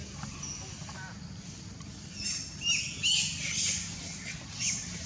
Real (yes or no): yes